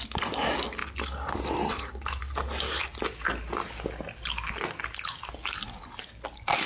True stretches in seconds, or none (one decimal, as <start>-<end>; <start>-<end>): 0.0-6.7